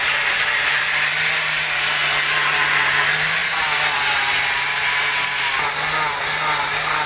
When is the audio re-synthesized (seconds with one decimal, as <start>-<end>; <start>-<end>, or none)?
none